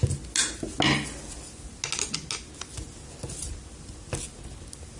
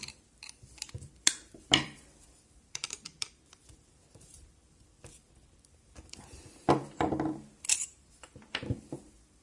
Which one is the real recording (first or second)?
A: first